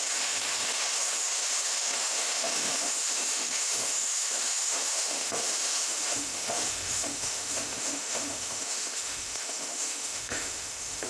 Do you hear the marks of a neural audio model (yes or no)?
yes